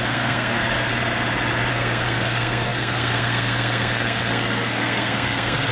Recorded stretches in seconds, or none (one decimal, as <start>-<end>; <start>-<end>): 0.9-1.7